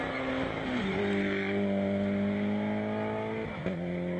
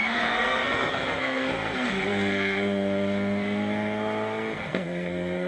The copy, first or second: second